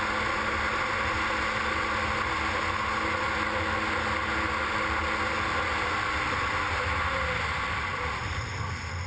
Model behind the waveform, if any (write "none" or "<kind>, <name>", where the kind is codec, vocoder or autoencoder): none